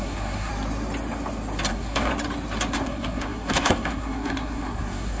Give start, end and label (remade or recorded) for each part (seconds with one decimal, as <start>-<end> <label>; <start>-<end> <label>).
0.0-0.5 remade; 0.5-1.7 recorded; 1.7-2.1 remade; 2.1-2.7 recorded; 2.7-5.2 remade